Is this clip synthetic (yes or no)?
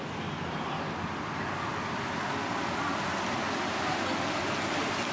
no